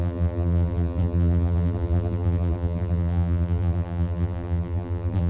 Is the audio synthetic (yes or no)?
yes